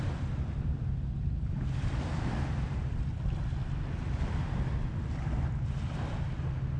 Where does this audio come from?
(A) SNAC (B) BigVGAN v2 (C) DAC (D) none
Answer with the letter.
D